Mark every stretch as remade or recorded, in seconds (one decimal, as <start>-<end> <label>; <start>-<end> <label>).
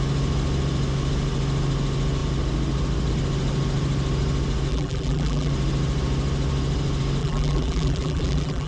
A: 0.0-4.7 recorded; 4.7-5.5 remade; 5.5-7.2 recorded; 7.2-8.7 remade